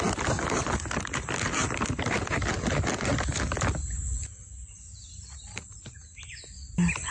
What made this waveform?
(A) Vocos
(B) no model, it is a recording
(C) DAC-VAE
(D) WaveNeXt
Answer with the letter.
B